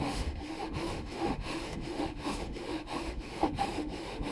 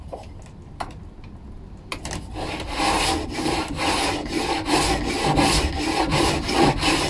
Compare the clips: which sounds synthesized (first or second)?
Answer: first